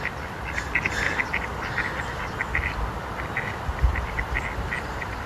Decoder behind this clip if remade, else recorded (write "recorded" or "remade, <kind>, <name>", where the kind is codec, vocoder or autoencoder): recorded